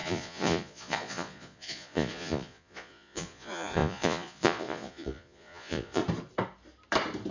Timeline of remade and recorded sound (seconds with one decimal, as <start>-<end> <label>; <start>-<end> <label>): 0.0-6.0 remade; 6.0-7.3 recorded